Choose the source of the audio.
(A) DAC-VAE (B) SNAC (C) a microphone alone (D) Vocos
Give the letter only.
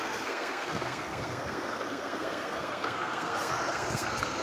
B